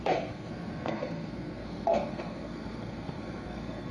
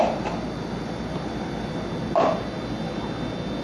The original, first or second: second